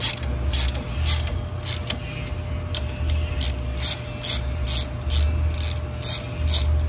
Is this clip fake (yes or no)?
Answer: no